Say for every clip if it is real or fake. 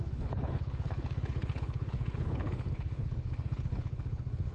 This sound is fake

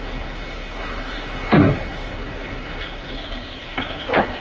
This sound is fake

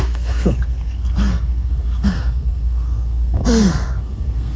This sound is fake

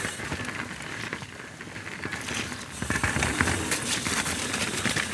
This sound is real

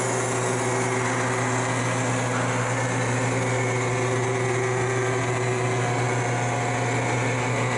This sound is real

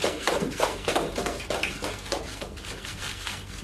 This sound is fake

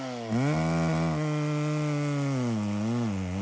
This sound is real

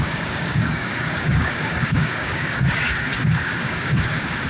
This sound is fake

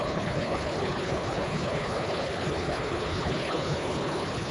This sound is fake